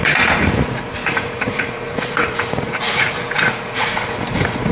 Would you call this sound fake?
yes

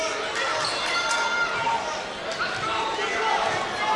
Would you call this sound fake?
no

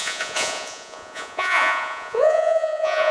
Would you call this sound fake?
yes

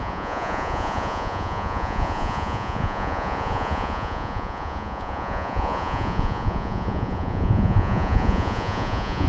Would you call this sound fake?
yes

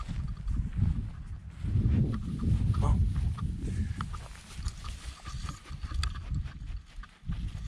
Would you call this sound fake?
no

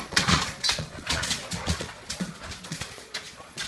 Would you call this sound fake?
yes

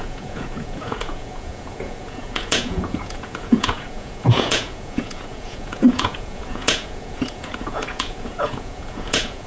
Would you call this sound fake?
yes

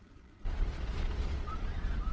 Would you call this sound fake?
yes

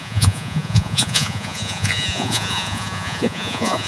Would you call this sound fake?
yes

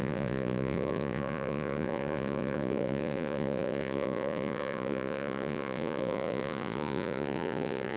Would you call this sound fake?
yes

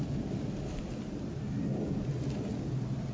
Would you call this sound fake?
no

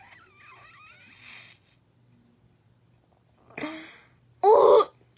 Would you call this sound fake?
no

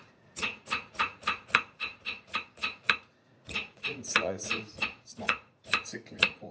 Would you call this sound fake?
yes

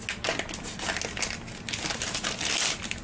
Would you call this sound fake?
no